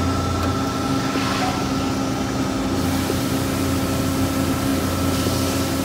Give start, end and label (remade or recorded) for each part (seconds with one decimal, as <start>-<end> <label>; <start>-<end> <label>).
0.0-5.8 recorded